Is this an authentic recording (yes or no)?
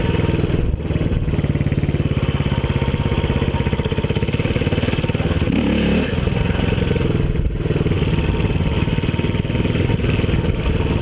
yes